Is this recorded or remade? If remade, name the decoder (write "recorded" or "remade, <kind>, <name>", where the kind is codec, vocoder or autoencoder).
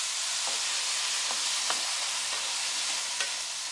recorded